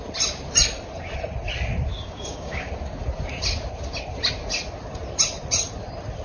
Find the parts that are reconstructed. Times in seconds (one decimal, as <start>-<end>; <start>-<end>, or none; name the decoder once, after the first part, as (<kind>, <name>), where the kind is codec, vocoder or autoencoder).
1.9-2.7 (codec, DAC)